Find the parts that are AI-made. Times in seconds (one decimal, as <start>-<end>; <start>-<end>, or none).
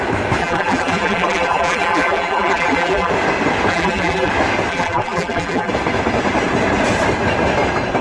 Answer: 0.4-3.1; 3.7-4.3; 4.7-5.7